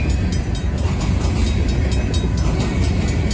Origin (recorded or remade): recorded